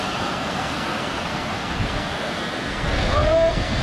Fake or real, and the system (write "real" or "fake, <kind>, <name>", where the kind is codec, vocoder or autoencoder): fake, codec, SNAC